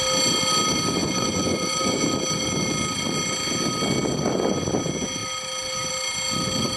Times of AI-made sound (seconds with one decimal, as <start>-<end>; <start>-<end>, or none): 1.0-2.0